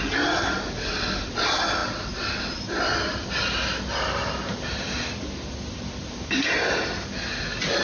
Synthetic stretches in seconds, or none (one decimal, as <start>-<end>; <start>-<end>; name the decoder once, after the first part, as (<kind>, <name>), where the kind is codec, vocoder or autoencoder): none